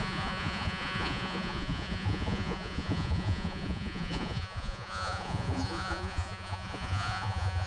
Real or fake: fake